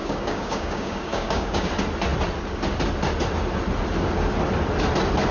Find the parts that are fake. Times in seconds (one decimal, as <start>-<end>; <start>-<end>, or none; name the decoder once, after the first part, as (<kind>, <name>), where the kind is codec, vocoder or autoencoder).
0.0-1.7 (codec, DAC)

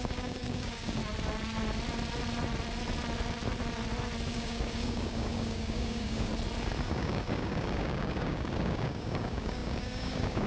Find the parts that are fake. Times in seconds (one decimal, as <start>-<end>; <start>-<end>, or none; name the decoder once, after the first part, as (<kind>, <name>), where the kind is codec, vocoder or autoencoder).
0.0-1.0 (codec, DAC); 4.3-6.3; 6.9-10.5

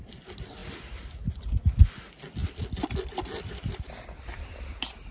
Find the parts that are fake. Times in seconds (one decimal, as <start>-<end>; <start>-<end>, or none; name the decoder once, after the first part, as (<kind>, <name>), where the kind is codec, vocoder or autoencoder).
none

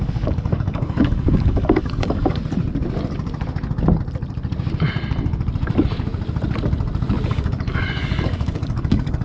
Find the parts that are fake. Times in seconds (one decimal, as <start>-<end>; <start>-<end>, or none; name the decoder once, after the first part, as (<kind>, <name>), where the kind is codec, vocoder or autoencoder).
0.0-2.4 (codec, DAC); 7.3-9.2

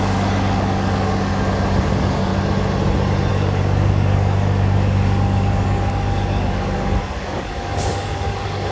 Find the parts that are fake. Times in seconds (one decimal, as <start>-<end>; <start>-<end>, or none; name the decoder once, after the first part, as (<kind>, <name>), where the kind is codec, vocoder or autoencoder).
0.0-1.3 (codec, DAC); 1.8-2.3; 3.3-8.7

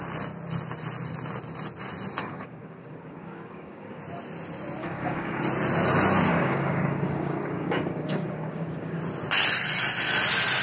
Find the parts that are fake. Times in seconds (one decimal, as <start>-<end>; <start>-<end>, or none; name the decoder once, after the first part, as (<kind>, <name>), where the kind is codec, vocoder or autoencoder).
2.2-4.0 (codec, DAC); 4.8-5.4; 6.3-9.0

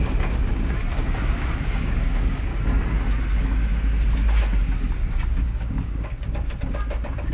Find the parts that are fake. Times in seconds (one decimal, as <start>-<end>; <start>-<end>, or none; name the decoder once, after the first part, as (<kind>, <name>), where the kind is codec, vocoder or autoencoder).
0.0-2.5 (codec, DAC); 5.4-7.3

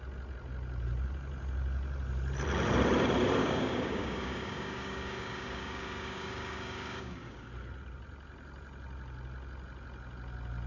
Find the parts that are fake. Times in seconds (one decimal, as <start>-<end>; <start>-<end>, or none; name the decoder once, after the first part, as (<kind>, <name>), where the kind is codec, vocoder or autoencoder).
3.4-7.5 (codec, DAC)